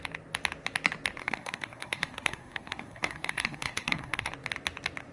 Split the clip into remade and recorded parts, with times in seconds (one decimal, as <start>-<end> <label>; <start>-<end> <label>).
0.0-1.2 recorded; 1.2-4.3 remade; 4.3-5.1 recorded